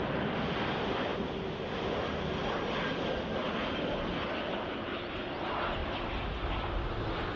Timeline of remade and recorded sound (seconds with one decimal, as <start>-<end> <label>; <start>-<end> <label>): 0.0-7.4 recorded

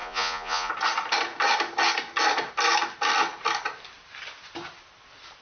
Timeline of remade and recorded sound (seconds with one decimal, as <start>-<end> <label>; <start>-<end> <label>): 0.0-0.7 remade; 0.7-5.4 recorded

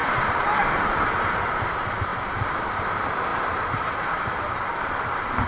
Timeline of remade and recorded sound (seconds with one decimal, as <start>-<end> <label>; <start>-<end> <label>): 0.0-5.5 recorded

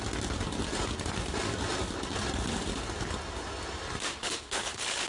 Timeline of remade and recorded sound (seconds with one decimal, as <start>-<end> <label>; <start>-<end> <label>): 0.0-4.2 recorded; 4.2-5.1 remade

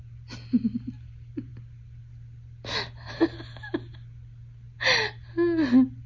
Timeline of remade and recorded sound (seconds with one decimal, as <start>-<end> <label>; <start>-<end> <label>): 0.0-6.1 recorded

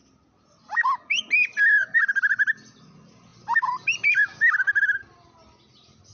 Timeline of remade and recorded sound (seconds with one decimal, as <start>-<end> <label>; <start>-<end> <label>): 0.0-2.0 remade; 2.0-6.1 recorded

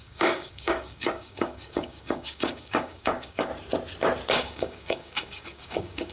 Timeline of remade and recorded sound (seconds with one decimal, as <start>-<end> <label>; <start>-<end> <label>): 0.0-3.5 remade; 3.5-4.3 recorded; 4.3-6.1 remade

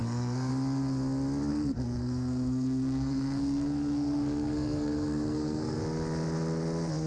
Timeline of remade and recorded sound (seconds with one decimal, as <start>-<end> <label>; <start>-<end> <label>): 0.0-0.5 remade; 0.5-1.5 recorded; 1.5-5.8 remade; 5.8-7.1 recorded